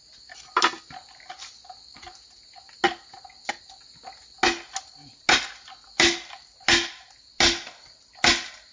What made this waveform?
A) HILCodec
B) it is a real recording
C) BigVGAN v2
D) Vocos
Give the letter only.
B